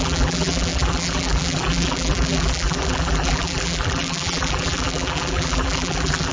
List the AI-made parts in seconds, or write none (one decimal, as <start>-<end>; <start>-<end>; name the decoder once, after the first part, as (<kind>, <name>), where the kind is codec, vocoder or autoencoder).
0.0-6.3 (vocoder, BigVGAN v2)